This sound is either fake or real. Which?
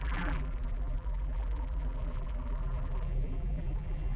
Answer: fake